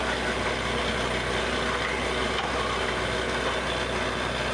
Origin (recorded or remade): recorded